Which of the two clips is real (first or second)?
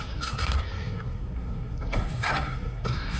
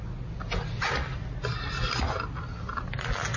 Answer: second